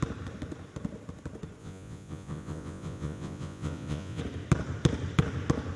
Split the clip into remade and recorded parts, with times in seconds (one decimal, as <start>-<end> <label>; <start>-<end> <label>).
0.0-1.6 recorded; 1.6-4.2 remade; 4.2-5.8 recorded